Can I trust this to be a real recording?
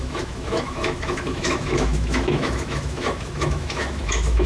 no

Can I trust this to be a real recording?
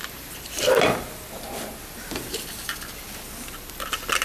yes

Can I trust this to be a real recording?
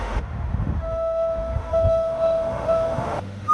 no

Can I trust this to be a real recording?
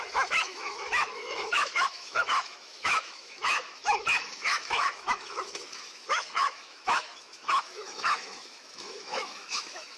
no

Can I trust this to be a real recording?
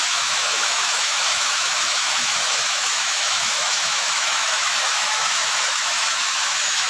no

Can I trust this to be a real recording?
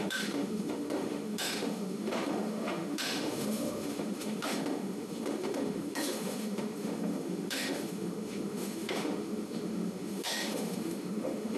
no